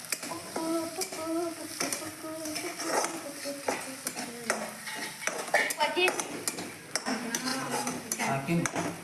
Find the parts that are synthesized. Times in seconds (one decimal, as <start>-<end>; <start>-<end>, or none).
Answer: 0.4-2.9; 7.5-8.2